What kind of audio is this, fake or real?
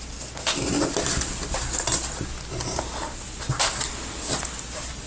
real